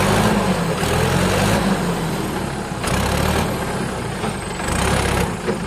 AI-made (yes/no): no